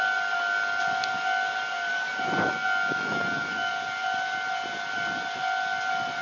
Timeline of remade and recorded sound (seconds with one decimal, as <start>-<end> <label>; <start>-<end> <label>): 0.0-1.9 recorded; 1.9-3.7 remade; 3.7-6.2 recorded